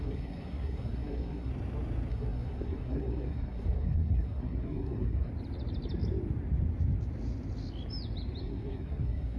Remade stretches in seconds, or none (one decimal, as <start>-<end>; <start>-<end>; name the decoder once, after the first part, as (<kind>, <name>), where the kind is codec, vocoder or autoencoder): 0.0-1.5 (codec, SNAC); 2.1-5.3; 8.4-9.4